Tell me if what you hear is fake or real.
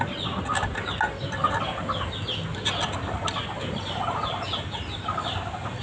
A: real